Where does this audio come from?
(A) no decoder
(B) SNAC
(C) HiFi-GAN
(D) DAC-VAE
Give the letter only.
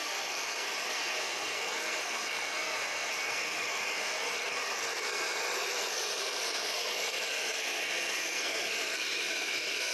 B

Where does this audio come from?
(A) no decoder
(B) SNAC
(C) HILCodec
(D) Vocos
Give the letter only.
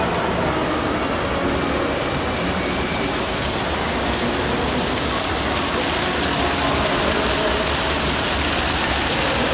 A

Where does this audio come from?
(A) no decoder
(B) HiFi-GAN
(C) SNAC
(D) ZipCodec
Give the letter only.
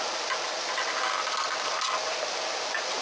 A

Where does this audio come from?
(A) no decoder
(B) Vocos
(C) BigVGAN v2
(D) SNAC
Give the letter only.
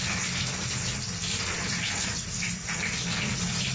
A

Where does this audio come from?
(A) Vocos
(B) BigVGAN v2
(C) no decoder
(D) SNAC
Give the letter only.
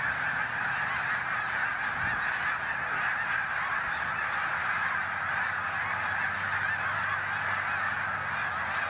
C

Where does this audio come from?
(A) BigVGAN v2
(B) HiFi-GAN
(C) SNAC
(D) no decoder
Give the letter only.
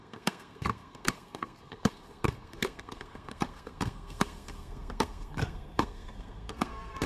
C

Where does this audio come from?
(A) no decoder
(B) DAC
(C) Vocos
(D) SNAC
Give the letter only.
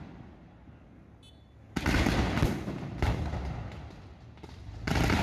A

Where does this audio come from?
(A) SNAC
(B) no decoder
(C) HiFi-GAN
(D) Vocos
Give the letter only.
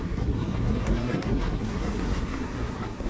A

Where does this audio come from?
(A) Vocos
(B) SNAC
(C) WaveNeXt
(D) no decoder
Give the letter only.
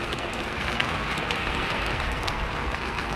B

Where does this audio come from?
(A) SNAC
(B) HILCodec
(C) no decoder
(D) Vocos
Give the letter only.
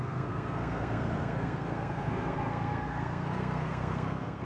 A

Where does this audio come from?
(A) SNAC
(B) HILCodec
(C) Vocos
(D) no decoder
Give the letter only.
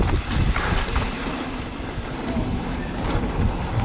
D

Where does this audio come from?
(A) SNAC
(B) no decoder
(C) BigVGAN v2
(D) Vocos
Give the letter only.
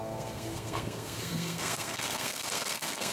A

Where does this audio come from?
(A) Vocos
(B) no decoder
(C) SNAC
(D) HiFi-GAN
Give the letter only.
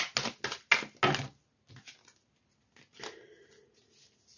B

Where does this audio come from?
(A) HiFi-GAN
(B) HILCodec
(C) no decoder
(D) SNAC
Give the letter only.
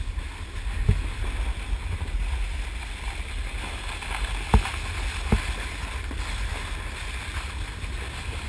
C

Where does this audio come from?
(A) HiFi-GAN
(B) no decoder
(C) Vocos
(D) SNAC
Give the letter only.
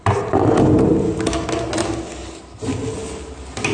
B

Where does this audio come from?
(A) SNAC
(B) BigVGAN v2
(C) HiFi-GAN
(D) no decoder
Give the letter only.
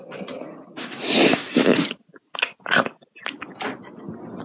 D